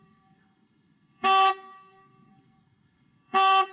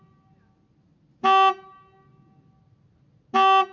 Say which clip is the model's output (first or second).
first